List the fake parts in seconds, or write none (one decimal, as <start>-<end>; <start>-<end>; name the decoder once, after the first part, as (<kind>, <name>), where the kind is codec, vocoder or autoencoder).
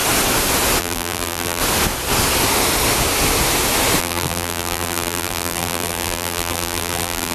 0.8-1.6 (vocoder, BigVGAN v2); 4.0-7.3